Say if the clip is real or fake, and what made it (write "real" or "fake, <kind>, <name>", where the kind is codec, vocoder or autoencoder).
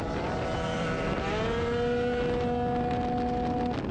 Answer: real